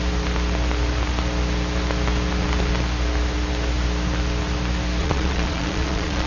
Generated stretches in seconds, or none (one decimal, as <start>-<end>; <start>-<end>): 5.0-6.3